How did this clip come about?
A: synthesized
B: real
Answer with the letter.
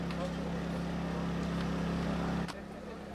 B